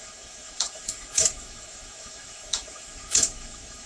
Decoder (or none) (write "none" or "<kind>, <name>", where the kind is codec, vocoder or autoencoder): autoencoder, DAC-VAE